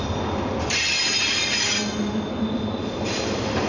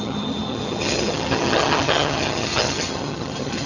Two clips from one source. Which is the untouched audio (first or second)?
first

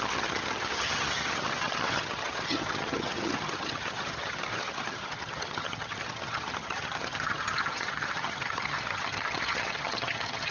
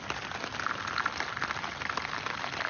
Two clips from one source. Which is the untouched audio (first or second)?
second